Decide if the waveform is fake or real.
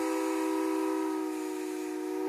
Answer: real